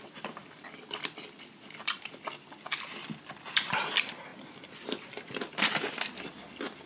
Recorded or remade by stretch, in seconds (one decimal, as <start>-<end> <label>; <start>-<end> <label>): 0.0-0.4 recorded; 0.4-3.7 remade; 3.7-6.9 recorded